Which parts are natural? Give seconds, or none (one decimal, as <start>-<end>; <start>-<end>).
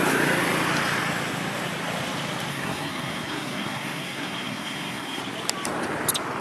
0.0-2.5; 5.2-6.4